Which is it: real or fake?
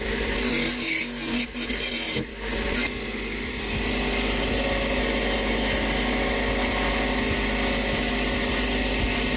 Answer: real